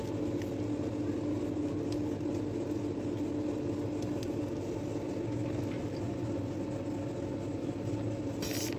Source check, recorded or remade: recorded